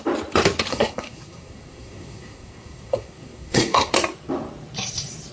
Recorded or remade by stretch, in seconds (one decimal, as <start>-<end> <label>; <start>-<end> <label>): 0.0-0.7 recorded; 0.7-3.9 remade; 3.9-5.3 recorded